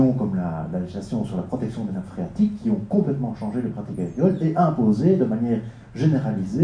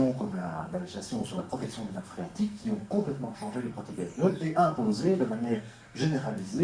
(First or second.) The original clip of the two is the first